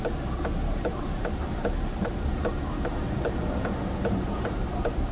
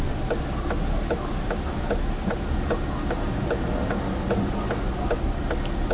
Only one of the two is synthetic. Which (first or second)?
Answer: first